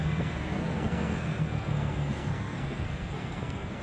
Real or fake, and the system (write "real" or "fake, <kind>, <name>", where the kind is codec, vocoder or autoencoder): fake, codec, SNAC